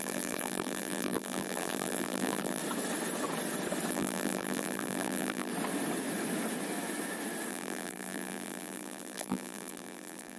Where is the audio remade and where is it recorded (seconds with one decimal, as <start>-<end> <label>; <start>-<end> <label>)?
0.0-2.6 remade; 2.6-3.9 recorded; 3.9-5.5 remade; 5.5-7.5 recorded; 7.5-10.4 remade